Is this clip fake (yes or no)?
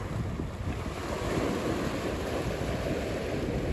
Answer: no